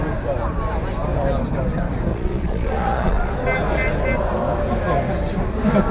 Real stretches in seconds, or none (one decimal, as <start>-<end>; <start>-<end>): 0.0-2.1; 3.3-5.9